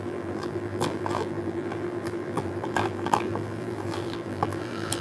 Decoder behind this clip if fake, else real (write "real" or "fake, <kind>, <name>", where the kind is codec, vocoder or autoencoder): fake, vocoder, BigVGAN v2